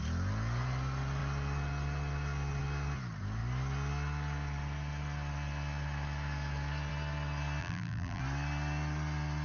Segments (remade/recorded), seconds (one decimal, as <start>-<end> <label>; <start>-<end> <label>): 0.0-7.6 recorded; 7.6-8.2 remade; 8.2-9.4 recorded